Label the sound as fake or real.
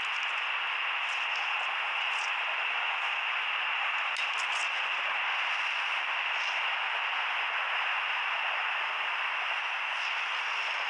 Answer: real